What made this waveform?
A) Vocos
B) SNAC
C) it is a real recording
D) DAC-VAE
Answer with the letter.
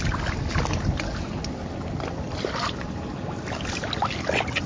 C